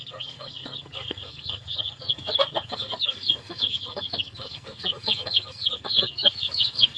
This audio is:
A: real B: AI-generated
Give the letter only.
B